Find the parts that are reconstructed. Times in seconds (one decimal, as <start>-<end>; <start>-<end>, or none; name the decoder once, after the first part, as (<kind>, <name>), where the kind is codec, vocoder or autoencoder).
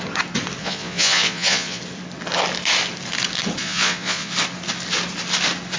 0.6-1.8 (vocoder, Vocos); 3.6-4.3